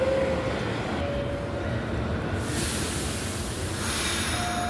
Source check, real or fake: real